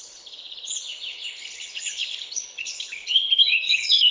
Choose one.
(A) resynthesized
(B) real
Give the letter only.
A